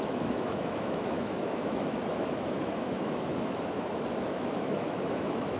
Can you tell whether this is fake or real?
fake